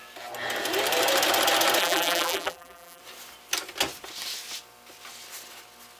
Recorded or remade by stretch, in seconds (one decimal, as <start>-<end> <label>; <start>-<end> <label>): 0.0-1.8 recorded; 1.8-3.0 remade; 3.0-6.0 recorded